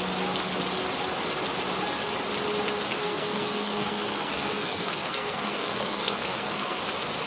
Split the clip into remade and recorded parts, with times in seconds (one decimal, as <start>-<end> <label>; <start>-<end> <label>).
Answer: 0.0-3.0 recorded; 3.0-6.8 remade; 6.8-7.3 recorded

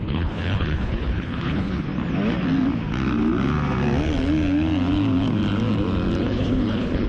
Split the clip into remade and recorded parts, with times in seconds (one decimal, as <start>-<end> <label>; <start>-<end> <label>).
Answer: 0.0-1.9 remade; 1.9-6.2 recorded; 6.2-7.1 remade

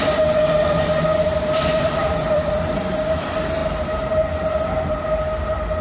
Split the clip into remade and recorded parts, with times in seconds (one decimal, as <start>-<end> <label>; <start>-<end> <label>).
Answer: 0.0-3.6 remade; 3.6-4.9 recorded; 4.9-5.8 remade

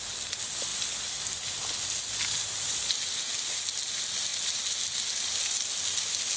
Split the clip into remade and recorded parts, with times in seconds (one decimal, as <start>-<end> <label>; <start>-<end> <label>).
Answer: 0.0-6.4 recorded

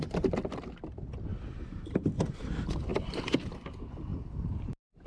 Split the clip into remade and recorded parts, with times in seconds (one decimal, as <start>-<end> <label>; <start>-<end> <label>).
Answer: 0.0-1.3 recorded; 1.3-2.5 remade; 2.5-2.9 recorded; 2.9-3.5 remade; 3.5-4.1 recorded; 4.1-5.1 remade

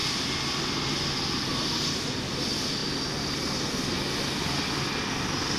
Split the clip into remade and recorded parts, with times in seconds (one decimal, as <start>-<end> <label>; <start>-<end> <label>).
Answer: 0.0-5.6 recorded